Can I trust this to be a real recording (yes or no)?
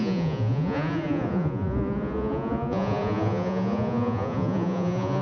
no